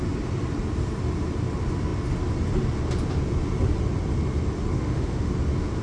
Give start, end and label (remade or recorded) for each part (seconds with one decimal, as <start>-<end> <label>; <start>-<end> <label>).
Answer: 0.0-4.7 recorded; 4.7-5.3 remade; 5.3-5.8 recorded